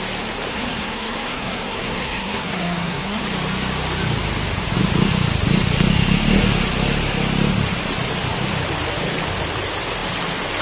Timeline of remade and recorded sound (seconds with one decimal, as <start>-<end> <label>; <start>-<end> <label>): 0.0-0.5 recorded; 0.5-3.2 remade; 3.2-10.6 recorded